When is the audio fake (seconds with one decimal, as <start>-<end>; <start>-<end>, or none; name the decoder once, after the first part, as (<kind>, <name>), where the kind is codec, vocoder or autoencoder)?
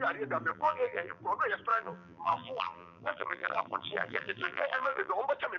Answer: 0.5-1.2 (vocoder, BigVGAN v2); 1.7-5.1